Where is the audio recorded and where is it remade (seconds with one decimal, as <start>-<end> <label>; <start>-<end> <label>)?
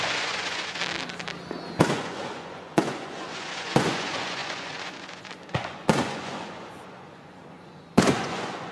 0.0-0.8 remade; 0.8-1.8 recorded; 1.8-8.7 remade